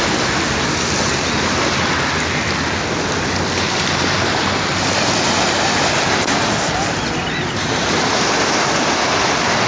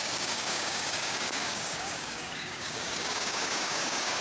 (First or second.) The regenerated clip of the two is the second